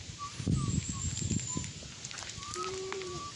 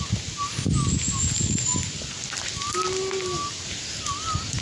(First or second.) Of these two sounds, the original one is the second